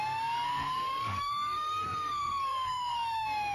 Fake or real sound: fake